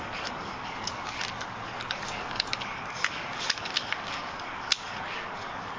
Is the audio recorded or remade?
remade